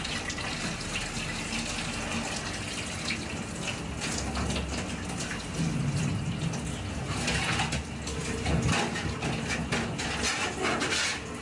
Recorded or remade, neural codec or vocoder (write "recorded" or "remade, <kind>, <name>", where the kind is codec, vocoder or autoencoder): recorded